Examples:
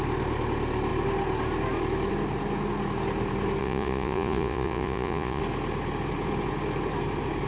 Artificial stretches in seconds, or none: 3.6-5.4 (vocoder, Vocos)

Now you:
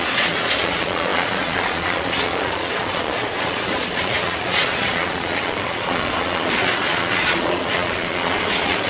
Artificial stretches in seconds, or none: 0.0-8.9 (vocoder, Vocos)

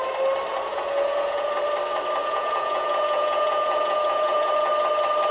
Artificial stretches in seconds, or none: 0.7-1.5 (vocoder, Vocos); 2.2-4.5

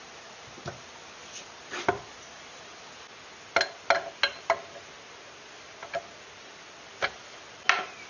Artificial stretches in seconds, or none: none

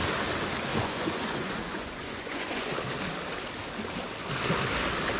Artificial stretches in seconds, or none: 0.7-2.7 (vocoder, Vocos)